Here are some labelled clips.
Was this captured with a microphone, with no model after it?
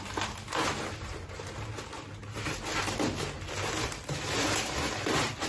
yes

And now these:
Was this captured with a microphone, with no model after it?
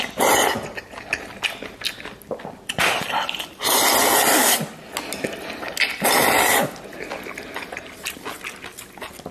yes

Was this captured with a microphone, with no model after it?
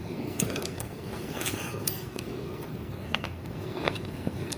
no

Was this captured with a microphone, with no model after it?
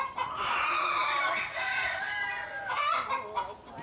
yes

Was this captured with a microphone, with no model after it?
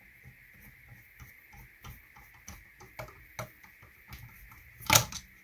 yes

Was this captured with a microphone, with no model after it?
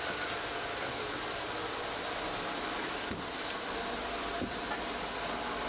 yes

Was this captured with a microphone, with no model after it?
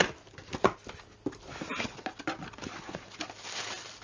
yes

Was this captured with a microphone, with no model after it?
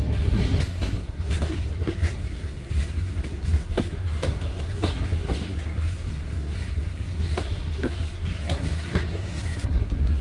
no